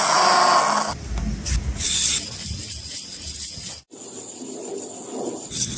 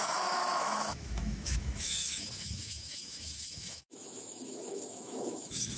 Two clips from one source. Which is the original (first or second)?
first